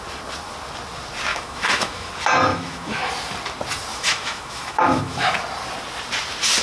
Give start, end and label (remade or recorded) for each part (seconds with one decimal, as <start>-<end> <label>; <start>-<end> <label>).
0.0-1.3 recorded; 1.3-2.1 remade; 2.1-2.5 recorded; 2.5-3.1 remade; 3.1-3.9 recorded; 3.9-5.3 remade; 5.3-6.6 recorded